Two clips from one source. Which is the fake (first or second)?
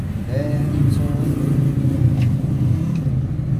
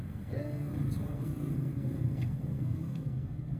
second